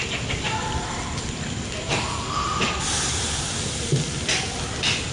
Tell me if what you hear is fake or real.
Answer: real